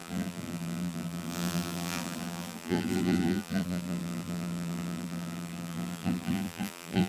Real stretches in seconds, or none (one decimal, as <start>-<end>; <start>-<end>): none